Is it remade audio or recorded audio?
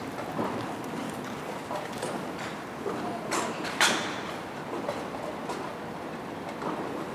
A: recorded